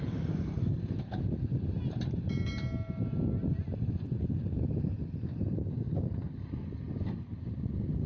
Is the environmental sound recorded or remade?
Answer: recorded